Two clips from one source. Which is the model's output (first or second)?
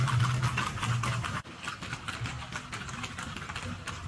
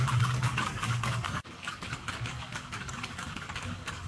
second